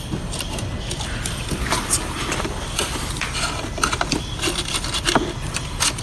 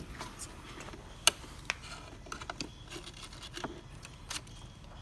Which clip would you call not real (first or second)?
first